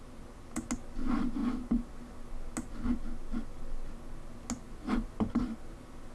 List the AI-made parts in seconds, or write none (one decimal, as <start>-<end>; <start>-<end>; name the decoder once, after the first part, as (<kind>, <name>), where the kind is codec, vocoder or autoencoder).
none